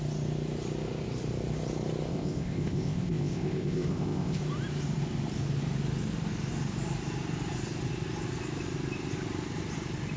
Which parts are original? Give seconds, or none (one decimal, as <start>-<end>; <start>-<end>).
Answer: 0.0-2.1; 4.4-10.2